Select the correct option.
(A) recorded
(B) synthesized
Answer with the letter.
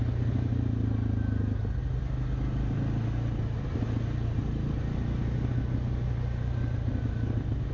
A